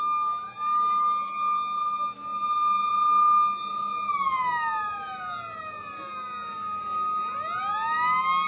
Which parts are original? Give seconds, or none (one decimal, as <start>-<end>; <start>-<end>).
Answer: 0.0-8.5